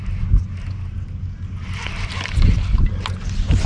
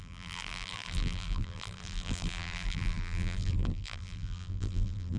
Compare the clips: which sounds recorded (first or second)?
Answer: first